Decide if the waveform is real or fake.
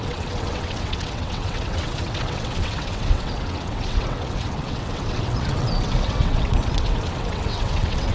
fake